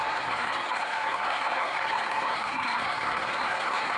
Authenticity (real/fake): fake